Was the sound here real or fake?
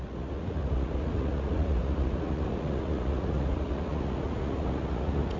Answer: fake